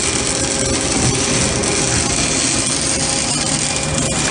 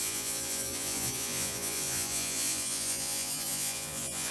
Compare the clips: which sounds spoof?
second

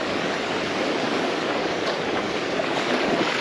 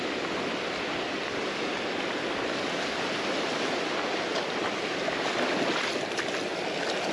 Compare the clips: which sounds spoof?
first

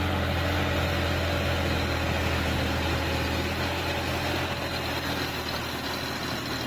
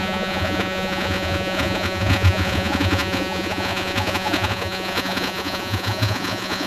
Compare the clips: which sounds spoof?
second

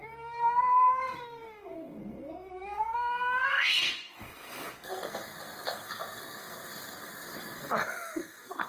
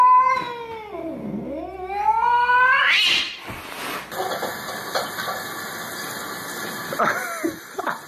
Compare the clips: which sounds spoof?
first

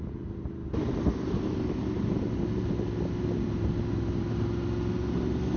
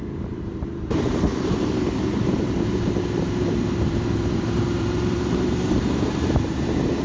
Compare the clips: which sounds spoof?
second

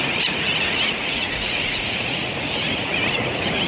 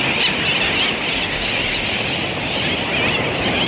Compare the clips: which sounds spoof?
first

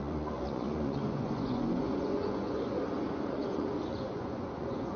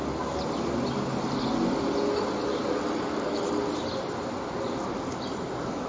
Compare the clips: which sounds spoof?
first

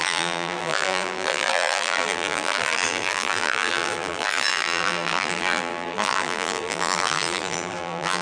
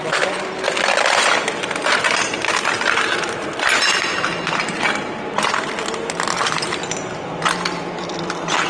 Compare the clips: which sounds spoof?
first